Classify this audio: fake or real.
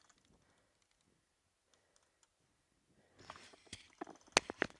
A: real